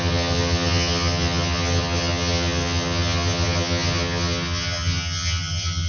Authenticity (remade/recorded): remade